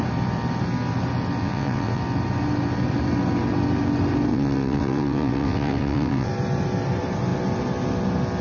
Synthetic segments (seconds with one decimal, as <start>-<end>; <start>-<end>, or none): 1.4-2.0; 4.3-6.3